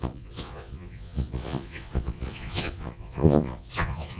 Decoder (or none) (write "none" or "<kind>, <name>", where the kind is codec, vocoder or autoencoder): vocoder, Vocos